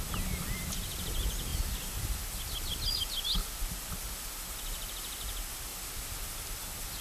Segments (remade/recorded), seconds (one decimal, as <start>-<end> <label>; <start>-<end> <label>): 0.0-7.0 recorded